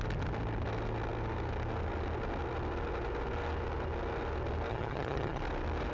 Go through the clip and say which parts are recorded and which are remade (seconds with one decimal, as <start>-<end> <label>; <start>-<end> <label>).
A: 0.0-4.7 recorded; 4.7-5.4 remade; 5.4-5.9 recorded